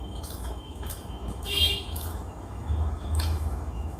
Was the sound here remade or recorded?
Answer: remade